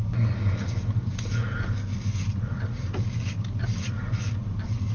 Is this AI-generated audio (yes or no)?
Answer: no